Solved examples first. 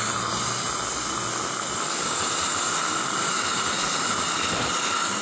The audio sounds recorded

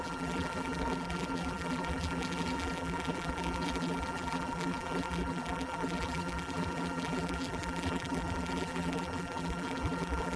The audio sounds remade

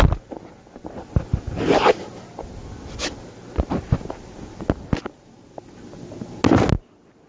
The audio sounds recorded